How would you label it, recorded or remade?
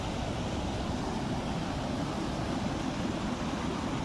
recorded